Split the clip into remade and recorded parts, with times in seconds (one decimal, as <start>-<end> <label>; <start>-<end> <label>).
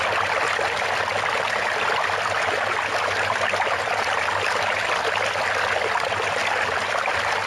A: 0.0-7.5 recorded